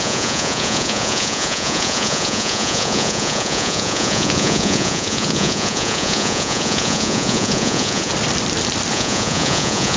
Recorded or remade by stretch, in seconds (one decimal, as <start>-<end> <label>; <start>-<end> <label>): 0.0-8.1 remade; 8.1-8.9 recorded; 8.9-10.0 remade